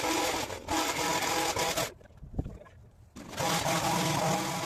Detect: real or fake real